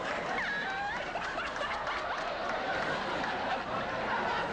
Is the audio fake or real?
real